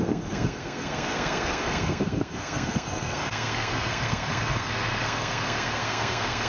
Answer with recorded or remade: remade